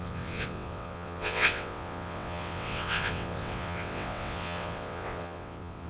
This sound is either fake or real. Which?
fake